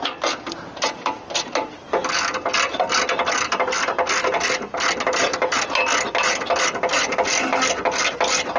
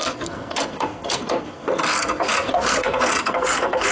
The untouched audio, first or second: first